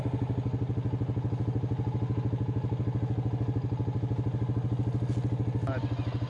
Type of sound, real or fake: real